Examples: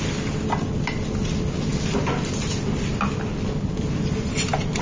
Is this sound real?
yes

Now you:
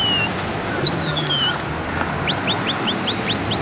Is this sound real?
yes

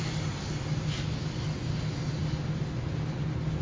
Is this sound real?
yes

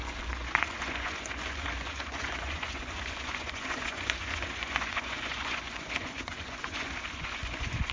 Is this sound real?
no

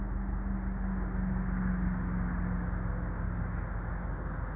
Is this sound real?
yes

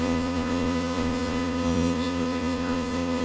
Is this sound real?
no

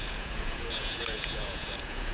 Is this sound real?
no